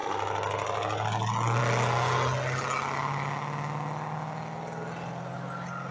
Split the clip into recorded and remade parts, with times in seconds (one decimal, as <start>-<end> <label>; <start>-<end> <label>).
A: 0.0-5.9 recorded